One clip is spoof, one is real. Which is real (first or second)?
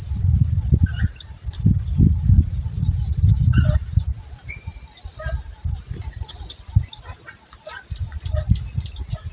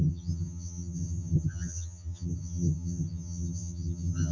first